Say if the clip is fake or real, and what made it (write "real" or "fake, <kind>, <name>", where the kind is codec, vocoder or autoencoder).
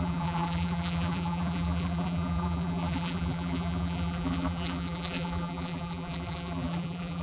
fake, vocoder, BigVGAN v2